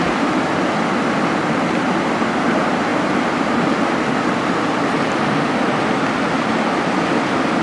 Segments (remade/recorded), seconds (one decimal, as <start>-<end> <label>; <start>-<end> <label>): 0.0-7.6 recorded